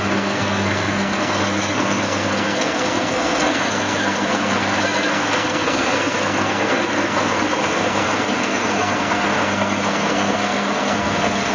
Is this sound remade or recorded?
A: remade